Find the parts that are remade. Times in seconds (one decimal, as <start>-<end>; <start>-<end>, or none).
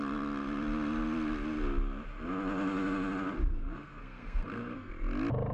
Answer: 3.4-4.9